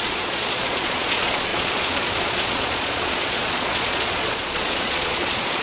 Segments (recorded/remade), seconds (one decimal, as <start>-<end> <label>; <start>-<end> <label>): 0.0-5.6 remade